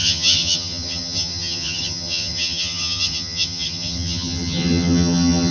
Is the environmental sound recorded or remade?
remade